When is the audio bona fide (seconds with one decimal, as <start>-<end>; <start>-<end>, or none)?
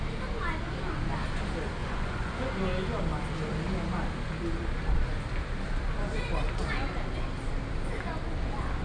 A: 0.0-1.8; 2.3-8.8